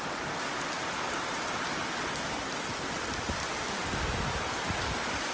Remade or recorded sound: recorded